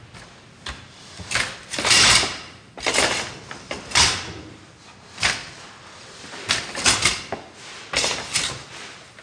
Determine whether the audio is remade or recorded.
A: recorded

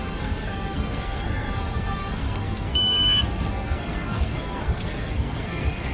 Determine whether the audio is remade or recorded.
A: remade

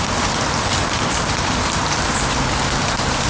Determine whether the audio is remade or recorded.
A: recorded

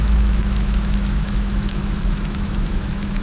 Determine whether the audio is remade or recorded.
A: remade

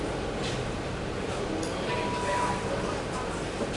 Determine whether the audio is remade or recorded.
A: recorded